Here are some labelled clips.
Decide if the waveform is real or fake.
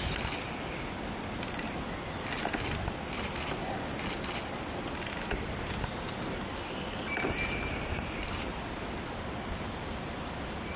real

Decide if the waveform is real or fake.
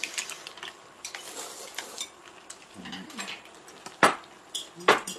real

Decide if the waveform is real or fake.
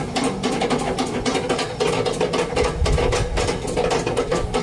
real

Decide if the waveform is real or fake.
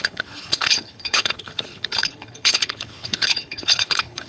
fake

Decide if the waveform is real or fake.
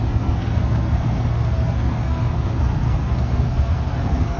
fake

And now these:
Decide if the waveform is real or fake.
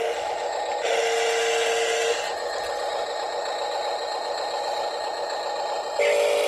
real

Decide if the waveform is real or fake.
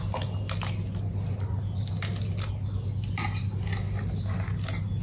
real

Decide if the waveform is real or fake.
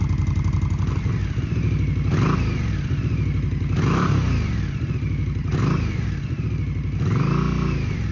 real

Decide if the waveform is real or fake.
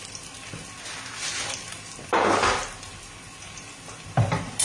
real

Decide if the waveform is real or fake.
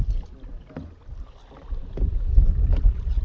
real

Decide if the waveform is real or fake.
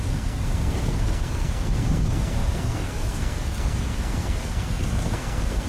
fake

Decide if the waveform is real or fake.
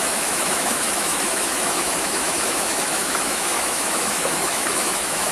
fake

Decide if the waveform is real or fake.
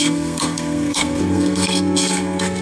fake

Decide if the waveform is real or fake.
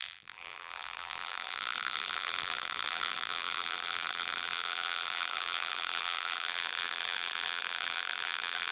fake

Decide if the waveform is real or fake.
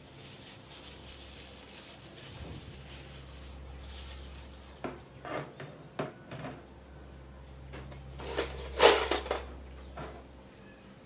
real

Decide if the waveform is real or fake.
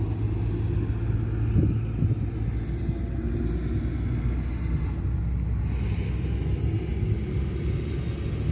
real